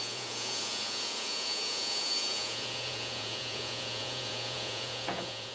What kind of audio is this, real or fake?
fake